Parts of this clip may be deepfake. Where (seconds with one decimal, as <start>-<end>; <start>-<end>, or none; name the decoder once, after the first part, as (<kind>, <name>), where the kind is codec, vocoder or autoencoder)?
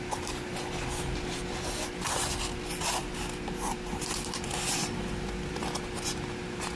3.0-5.5 (vocoder, BigVGAN v2)